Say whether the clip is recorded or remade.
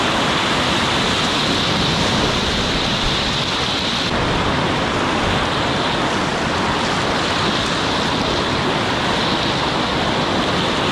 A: recorded